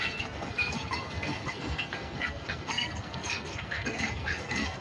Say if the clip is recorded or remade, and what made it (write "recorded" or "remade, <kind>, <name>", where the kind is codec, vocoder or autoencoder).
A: remade, codec, SNAC